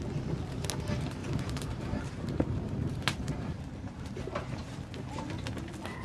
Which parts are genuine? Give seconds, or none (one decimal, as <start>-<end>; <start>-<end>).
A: 0.0-1.2; 4.8-6.0